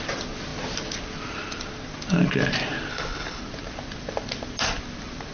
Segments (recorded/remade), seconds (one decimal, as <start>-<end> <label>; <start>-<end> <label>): 0.0-2.9 recorded; 2.9-3.4 remade; 3.4-5.3 recorded